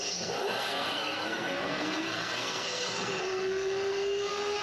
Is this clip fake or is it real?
fake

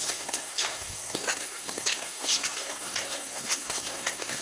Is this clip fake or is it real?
fake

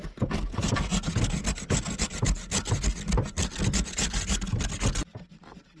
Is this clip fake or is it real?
real